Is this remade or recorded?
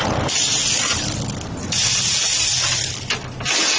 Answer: recorded